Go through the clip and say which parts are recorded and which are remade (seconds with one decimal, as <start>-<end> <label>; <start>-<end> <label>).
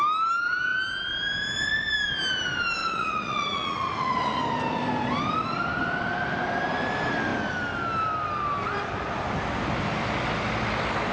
0.0-2.8 recorded; 2.8-4.4 remade; 4.4-11.1 recorded